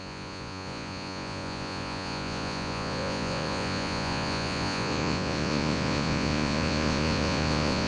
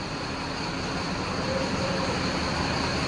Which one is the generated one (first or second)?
first